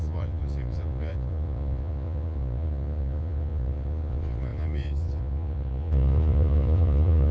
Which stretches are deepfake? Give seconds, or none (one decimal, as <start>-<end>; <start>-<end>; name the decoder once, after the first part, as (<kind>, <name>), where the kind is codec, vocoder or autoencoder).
0.0-7.3 (vocoder, Vocos)